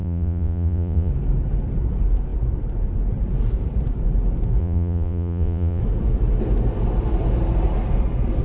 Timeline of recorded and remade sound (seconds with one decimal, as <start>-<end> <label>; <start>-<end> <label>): 0.0-1.1 remade; 1.1-4.6 recorded; 4.6-5.8 remade; 5.8-8.4 recorded